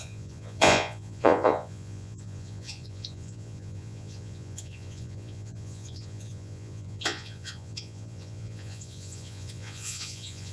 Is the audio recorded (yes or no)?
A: no